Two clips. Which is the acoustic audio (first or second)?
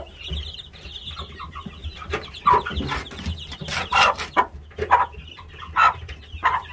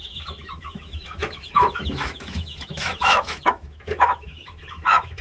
first